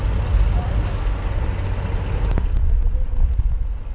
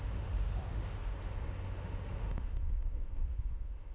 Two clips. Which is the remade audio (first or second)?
second